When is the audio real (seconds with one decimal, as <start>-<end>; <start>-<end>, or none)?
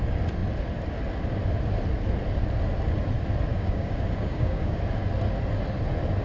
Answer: 0.0-3.5; 4.8-6.2